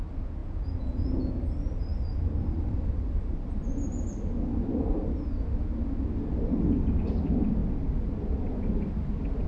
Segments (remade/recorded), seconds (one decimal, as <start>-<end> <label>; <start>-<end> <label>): 0.0-0.4 recorded; 0.4-1.3 remade; 1.3-9.5 recorded